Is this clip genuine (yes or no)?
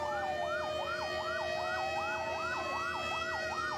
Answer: yes